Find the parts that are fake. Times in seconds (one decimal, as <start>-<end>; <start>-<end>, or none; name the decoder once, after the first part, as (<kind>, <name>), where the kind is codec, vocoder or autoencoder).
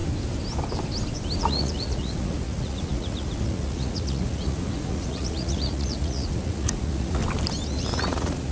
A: 1.4-7.2 (vocoder, Vocos); 7.7-8.5